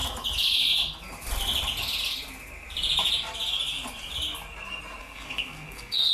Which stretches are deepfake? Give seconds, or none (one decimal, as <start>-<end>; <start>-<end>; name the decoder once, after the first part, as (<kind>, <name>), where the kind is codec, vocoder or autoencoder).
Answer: 5.0-6.1 (codec, SNAC)